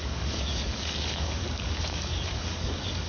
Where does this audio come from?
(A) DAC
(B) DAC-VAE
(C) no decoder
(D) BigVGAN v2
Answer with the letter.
A